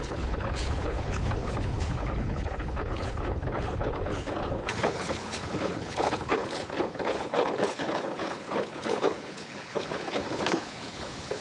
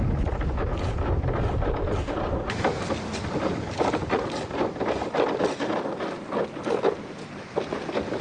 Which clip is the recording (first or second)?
second